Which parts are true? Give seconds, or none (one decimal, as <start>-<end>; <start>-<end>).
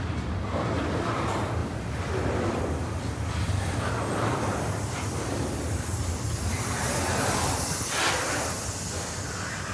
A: 0.0-1.6; 3.5-6.8; 9.2-9.7